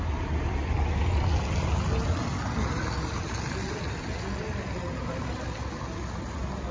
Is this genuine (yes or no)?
yes